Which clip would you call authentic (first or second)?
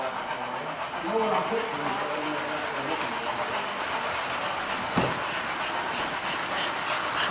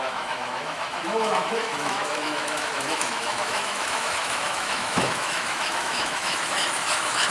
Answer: first